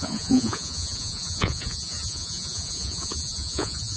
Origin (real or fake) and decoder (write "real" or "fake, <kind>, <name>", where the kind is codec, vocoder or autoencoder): fake, vocoder, Vocos